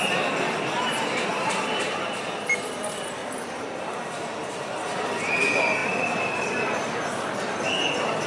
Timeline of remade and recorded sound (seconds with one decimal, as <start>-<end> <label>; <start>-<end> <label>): 0.0-1.3 recorded; 1.3-2.2 remade; 2.2-3.2 recorded; 3.2-5.3 remade; 5.3-5.8 recorded; 5.8-8.3 remade